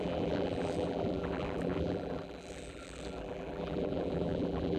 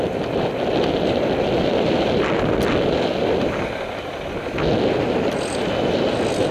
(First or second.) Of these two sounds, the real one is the second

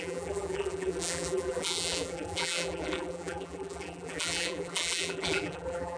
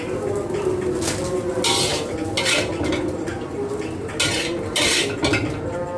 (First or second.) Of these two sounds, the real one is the second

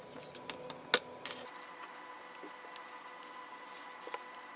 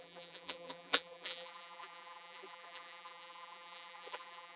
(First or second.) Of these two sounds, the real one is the first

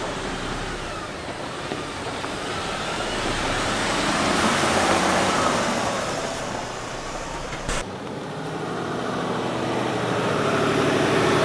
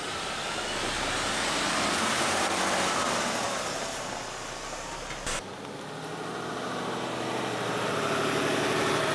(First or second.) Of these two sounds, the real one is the second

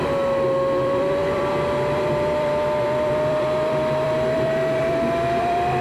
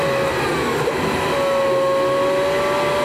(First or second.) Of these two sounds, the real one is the second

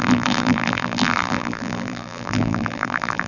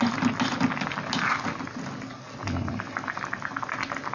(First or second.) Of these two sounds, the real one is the second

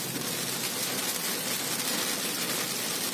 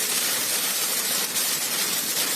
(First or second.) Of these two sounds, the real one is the first